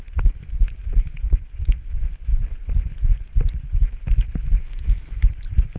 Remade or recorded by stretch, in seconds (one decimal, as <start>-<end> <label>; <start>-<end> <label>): 0.0-4.6 recorded; 4.6-5.2 remade; 5.2-5.8 recorded

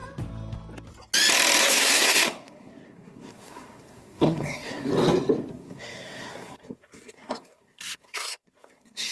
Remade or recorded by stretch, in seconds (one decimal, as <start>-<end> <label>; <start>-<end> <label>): 0.0-1.6 recorded; 1.6-4.9 remade; 4.9-5.5 recorded; 5.5-9.1 remade

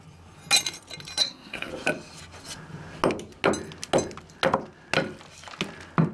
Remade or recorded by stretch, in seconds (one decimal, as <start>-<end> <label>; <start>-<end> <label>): 0.0-1.2 recorded; 1.2-1.7 remade; 1.7-6.1 recorded

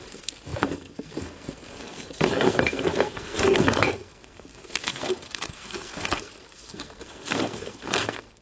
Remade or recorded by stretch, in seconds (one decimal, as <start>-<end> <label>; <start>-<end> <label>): 0.0-8.4 remade

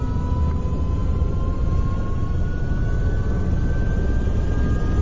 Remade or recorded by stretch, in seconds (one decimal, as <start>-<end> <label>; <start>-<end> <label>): 0.0-5.0 recorded